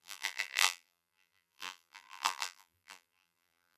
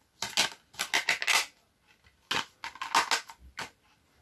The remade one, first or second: first